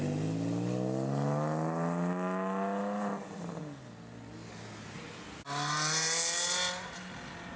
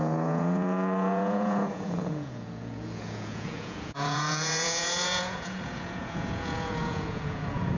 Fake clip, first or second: second